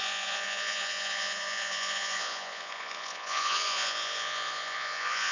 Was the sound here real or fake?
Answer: fake